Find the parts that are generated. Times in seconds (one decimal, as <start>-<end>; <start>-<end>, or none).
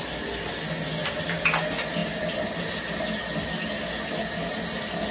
none